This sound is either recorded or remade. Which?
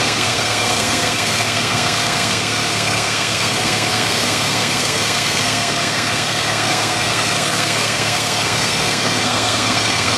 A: remade